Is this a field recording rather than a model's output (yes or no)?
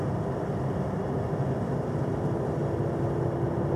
yes